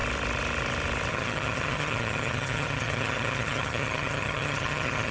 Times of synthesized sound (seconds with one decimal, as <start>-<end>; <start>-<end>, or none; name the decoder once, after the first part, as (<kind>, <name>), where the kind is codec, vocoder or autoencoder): 1.1-5.1 (vocoder, HiFi-GAN)